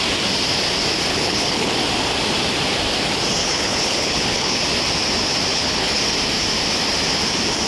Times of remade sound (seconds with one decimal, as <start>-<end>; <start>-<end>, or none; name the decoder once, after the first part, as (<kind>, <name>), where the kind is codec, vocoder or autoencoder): 1.1-1.7 (codec, HILCodec); 3.4-4.6; 5.5-6.0